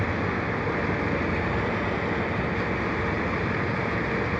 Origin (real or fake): real